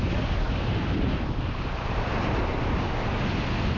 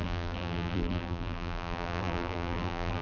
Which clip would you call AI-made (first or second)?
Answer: second